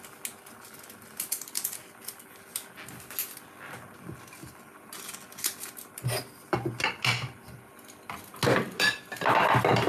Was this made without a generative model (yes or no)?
yes